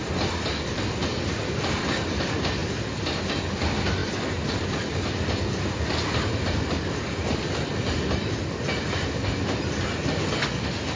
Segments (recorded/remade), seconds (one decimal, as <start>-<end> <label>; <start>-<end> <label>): 0.0-1.1 recorded; 1.1-2.2 remade; 2.2-2.6 recorded; 2.6-3.2 remade; 3.2-4.0 recorded; 4.0-8.3 remade; 8.3-10.9 recorded